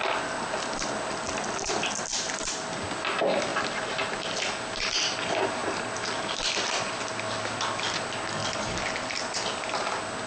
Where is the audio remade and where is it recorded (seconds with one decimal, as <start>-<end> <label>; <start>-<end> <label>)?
0.0-3.5 recorded; 3.5-4.4 remade; 4.4-8.4 recorded; 8.4-9.2 remade; 9.2-10.3 recorded